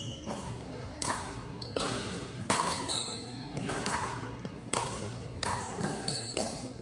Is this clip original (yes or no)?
no